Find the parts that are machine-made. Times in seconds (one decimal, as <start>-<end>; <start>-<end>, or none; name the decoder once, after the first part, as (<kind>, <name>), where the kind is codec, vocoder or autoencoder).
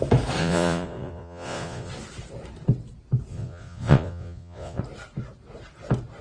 0.4-1.9 (vocoder, Vocos); 3.3-4.8